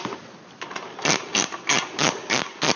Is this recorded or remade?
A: recorded